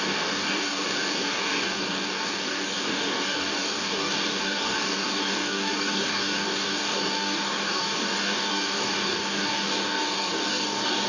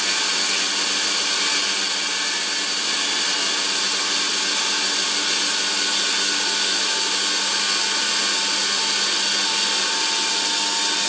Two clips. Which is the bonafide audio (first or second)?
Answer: second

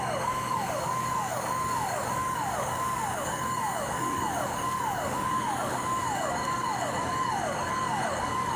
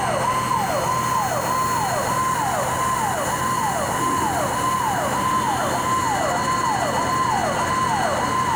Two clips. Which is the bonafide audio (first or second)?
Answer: second